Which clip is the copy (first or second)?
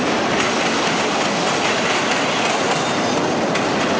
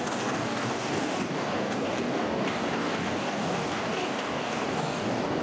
second